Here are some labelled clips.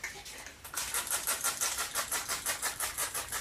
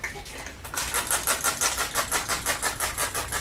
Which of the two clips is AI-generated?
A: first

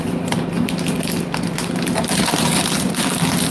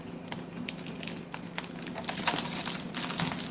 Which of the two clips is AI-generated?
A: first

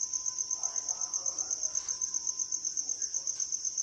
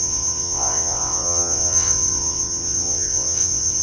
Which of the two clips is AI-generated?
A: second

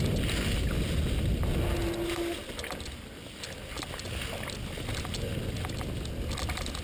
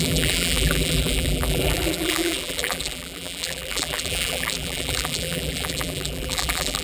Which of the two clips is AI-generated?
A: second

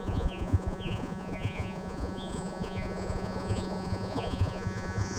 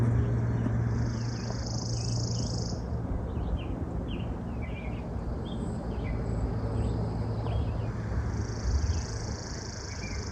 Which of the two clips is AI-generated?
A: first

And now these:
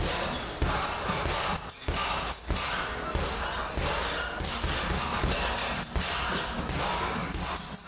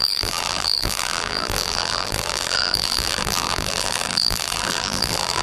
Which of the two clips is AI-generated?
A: second